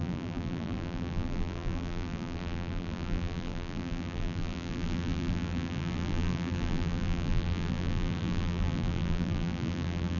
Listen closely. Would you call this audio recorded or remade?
remade